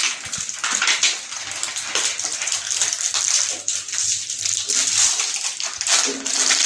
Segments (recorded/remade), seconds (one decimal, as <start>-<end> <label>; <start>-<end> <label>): 0.0-6.7 recorded